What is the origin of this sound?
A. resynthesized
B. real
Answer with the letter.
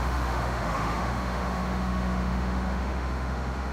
A